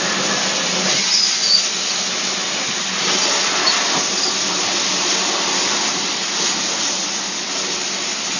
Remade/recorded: recorded